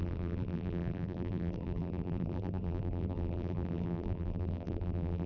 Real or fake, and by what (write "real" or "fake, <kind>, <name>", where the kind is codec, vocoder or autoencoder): fake, vocoder, BigVGAN v2